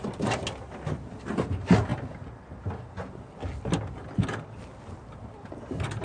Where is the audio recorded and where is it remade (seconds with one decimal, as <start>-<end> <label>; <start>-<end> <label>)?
0.0-6.0 recorded